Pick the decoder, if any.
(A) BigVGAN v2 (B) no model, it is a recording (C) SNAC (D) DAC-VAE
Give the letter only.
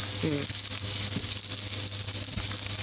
B